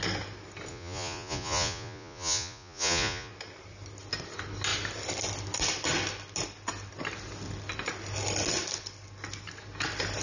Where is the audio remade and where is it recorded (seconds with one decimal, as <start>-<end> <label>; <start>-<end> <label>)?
0.0-0.7 recorded; 0.7-3.3 remade; 3.3-10.2 recorded